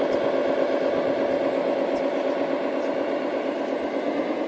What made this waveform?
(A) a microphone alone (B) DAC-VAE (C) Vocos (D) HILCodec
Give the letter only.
A